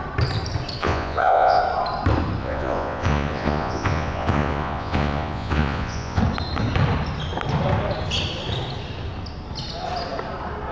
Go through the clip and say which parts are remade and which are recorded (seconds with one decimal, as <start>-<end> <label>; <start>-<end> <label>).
0.0-0.8 recorded; 0.8-1.6 remade; 1.6-2.4 recorded; 2.4-6.2 remade; 6.2-10.7 recorded